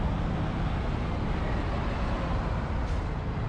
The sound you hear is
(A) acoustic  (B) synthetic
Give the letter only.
A